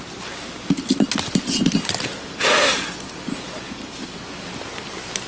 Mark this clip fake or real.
real